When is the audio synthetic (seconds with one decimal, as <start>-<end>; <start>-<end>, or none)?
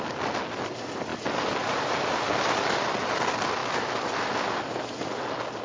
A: 1.1-3.2